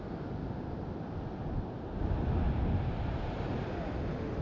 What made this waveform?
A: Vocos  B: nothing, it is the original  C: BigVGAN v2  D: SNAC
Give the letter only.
B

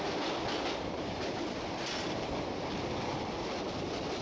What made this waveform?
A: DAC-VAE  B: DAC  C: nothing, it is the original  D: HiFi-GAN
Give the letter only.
C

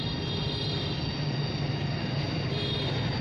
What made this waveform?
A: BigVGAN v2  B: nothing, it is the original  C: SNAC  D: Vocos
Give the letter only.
B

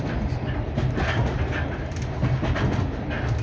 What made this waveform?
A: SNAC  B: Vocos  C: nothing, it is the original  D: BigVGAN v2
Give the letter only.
C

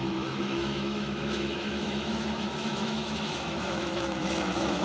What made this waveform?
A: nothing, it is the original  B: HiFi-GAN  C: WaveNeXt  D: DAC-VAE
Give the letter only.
D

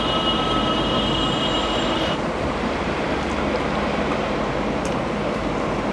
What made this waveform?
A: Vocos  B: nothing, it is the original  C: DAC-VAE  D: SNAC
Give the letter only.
B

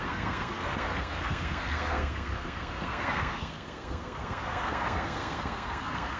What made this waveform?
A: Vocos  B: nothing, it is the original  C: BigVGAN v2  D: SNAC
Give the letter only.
D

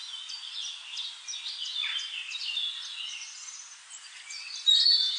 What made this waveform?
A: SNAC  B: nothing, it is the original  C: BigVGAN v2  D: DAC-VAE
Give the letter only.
B